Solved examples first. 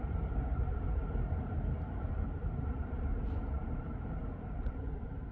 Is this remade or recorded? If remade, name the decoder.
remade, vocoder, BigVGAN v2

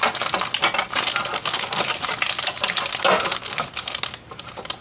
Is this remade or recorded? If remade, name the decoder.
recorded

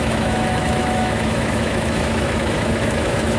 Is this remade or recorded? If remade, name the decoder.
remade, autoencoder, DAC-VAE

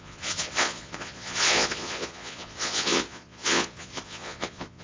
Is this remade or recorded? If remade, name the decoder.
remade, vocoder, Vocos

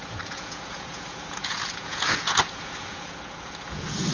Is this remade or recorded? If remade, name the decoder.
remade, vocoder, Vocos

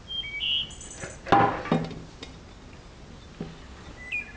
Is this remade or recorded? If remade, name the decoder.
recorded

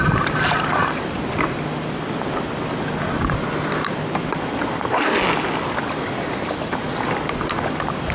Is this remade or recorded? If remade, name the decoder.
recorded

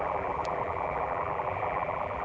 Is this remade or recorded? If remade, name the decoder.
remade, vocoder, BigVGAN v2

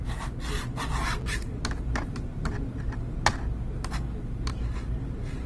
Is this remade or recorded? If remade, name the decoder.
recorded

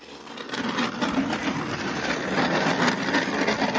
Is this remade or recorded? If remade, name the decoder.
recorded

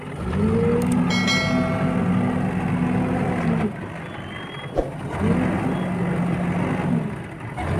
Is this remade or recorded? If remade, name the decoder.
recorded